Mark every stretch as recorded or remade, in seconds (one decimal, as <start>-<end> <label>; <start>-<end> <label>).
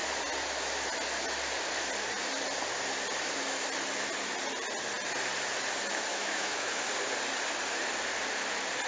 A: 0.0-6.1 recorded; 6.1-6.8 remade; 6.8-8.9 recorded